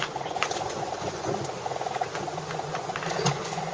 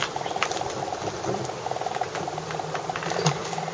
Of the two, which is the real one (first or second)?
second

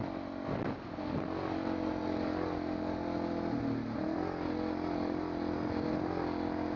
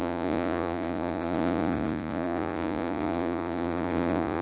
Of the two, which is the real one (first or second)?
first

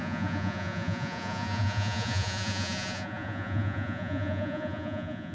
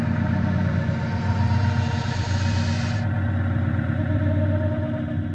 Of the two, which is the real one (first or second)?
second